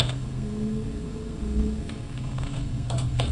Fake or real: fake